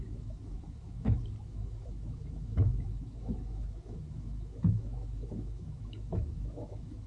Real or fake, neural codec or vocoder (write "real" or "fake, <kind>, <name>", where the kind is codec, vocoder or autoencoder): fake, autoencoder, DAC-VAE